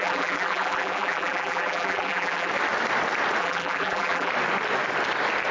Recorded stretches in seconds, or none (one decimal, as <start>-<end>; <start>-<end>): 2.5-3.4; 4.3-5.5